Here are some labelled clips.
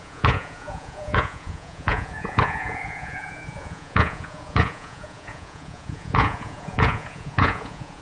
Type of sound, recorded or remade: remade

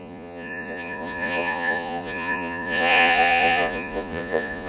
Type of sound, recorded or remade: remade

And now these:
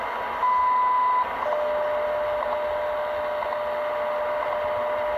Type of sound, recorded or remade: recorded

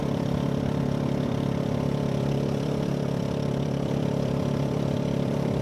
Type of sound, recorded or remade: remade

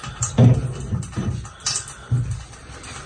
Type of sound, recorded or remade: recorded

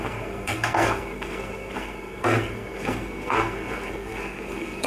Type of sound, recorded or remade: remade